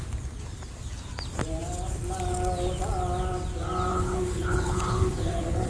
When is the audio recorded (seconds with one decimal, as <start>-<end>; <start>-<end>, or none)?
0.0-3.9